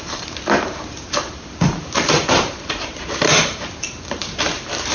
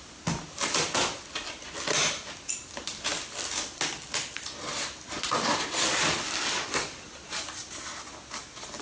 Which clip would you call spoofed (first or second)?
first